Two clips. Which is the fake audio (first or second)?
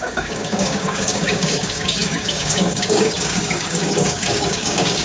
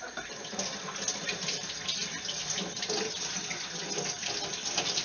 first